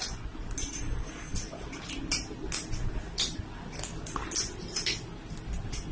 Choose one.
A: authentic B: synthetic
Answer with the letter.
A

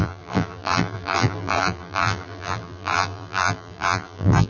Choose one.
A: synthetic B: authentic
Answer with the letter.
A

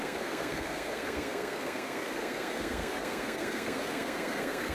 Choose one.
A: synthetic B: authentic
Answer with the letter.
A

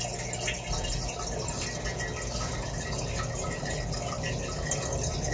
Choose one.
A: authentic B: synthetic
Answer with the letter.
A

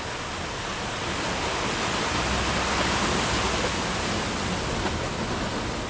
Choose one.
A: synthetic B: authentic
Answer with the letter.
B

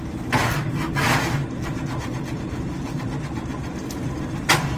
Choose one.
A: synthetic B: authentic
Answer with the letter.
B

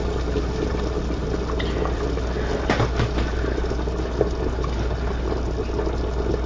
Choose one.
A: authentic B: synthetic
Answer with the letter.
A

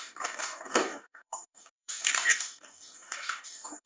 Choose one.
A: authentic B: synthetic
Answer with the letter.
B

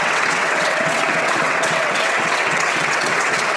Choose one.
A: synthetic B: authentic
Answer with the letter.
A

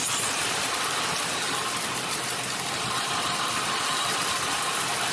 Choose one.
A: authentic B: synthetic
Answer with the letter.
A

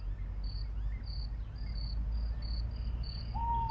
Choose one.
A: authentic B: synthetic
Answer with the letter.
A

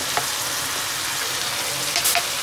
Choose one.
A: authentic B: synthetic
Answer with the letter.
A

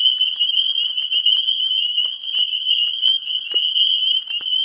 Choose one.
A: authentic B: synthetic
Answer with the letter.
A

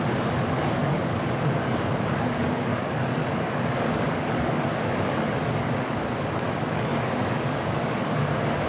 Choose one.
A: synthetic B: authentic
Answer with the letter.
A